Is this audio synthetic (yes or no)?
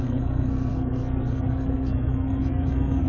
yes